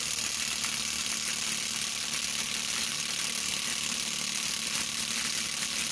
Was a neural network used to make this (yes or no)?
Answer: no